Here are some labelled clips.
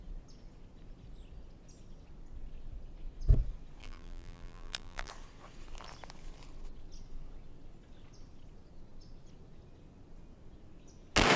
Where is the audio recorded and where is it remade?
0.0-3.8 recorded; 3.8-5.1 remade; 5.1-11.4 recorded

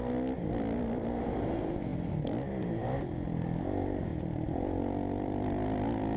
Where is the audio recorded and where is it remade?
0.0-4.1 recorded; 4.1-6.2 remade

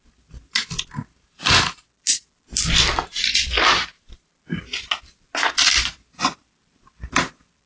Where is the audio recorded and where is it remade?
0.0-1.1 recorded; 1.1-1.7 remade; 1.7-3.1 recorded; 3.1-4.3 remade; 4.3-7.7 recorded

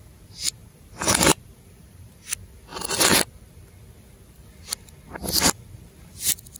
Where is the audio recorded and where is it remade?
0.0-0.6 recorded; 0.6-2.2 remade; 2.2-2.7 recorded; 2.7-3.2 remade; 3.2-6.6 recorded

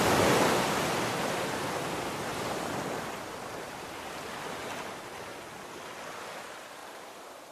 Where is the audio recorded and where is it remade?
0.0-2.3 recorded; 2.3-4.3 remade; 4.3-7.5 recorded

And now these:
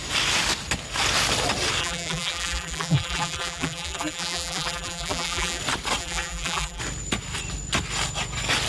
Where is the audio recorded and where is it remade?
0.0-1.8 recorded; 1.8-5.6 remade; 5.6-6.0 recorded; 6.0-6.8 remade; 6.8-8.7 recorded

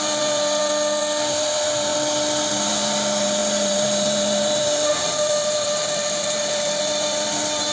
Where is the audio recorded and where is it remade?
0.0-0.6 remade; 0.6-1.2 recorded; 1.2-1.9 remade; 1.9-2.7 recorded; 2.7-7.7 remade

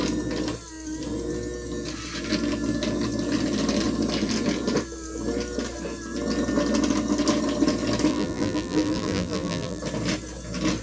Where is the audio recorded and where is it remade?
0.0-8.1 recorded; 8.1-9.8 remade; 9.8-10.8 recorded